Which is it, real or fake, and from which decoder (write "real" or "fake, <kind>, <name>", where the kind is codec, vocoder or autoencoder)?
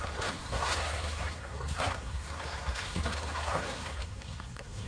fake, codec, SNAC